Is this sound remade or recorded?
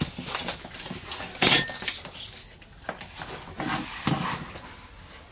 recorded